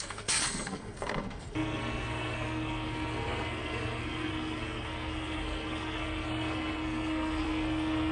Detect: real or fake fake